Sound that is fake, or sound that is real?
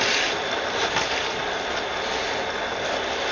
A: real